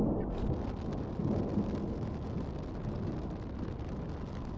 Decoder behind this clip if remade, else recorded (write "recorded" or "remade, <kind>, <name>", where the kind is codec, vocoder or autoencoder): recorded